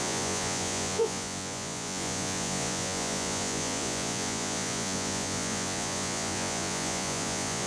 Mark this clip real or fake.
fake